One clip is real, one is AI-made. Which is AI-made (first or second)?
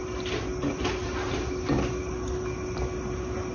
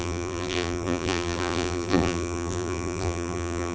second